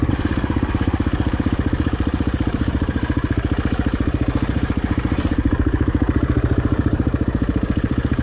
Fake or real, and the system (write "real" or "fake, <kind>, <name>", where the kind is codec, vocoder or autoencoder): fake, vocoder, BigVGAN v2